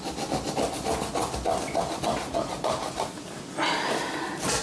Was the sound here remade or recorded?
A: recorded